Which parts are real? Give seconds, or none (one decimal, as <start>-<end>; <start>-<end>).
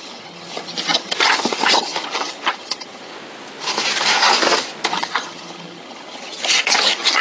3.1-4.9